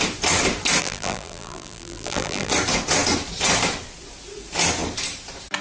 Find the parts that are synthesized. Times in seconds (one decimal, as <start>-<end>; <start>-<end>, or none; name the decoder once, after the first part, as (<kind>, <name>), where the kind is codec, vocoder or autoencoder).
0.8-2.5 (vocoder, BigVGAN v2)

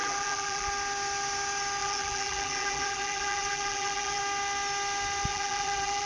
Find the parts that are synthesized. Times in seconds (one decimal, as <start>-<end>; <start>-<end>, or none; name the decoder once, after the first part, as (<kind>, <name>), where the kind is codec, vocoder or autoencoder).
0.0-0.7 (vocoder, BigVGAN v2); 1.8-4.2; 5.3-6.1